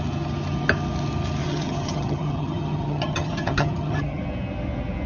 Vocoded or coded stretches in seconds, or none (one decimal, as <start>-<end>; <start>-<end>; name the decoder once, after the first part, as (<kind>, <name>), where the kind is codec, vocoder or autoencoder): 1.4-4.2 (vocoder, HiFi-GAN)